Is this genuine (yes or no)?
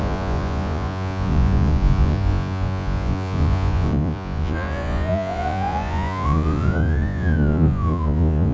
no